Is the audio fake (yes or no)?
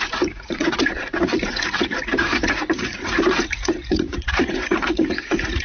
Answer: yes